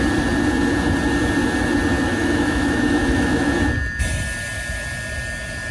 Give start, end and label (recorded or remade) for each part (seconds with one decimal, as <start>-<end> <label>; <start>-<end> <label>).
0.0-2.2 recorded; 2.2-3.5 remade; 3.5-5.7 recorded